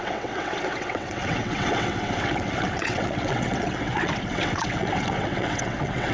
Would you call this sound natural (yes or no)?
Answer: no